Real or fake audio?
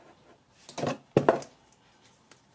real